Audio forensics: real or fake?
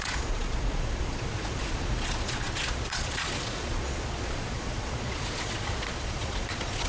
fake